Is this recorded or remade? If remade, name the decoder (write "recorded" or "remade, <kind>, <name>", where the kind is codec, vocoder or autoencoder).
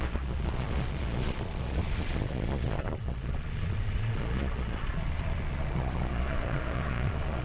remade, vocoder, Vocos